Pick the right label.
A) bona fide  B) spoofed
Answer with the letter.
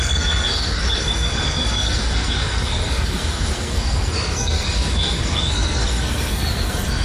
B